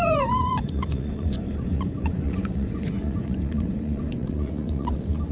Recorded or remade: remade